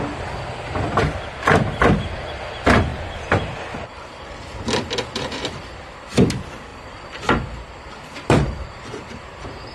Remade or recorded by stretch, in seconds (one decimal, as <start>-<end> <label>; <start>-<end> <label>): 0.0-2.9 recorded; 2.9-3.8 remade; 3.8-4.5 recorded; 4.5-5.8 remade; 5.8-6.7 recorded; 6.7-8.8 remade; 8.8-9.7 recorded